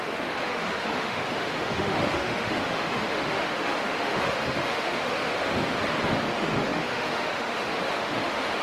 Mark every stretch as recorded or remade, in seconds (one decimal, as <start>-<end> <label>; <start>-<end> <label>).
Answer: 0.0-5.5 remade; 5.5-6.2 recorded; 6.2-8.6 remade